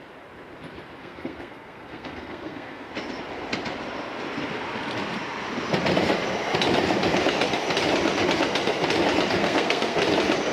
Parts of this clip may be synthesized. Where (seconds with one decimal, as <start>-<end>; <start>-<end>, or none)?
1.0-2.9; 9.4-10.0